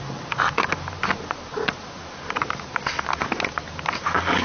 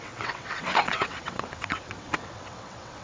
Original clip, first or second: first